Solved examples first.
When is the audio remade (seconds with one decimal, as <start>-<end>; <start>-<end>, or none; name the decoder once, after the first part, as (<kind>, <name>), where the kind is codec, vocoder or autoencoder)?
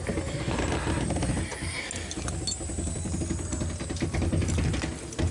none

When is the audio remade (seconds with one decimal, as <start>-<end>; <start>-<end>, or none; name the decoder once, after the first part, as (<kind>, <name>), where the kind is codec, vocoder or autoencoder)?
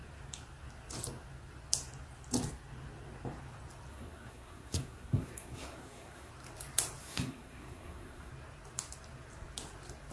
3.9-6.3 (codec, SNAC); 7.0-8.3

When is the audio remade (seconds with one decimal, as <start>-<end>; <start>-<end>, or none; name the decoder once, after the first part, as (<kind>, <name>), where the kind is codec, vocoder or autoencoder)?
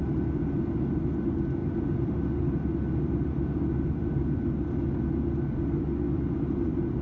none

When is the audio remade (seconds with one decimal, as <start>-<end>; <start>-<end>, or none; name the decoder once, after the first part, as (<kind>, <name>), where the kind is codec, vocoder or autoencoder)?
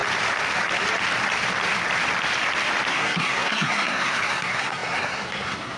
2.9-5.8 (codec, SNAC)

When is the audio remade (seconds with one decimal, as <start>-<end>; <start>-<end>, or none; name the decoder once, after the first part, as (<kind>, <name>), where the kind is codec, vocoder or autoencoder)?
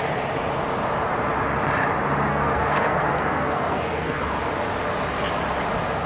2.3-4.2 (codec, SNAC)